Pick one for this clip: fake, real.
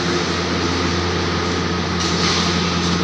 real